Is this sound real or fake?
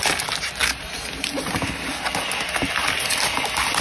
real